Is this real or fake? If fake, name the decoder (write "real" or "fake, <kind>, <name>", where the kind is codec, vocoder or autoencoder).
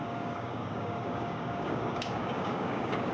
fake, codec, DAC